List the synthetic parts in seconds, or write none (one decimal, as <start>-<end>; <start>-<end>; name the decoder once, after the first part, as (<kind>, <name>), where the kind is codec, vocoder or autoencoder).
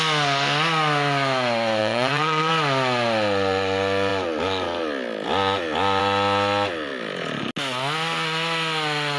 1.8-2.5 (vocoder, Vocos)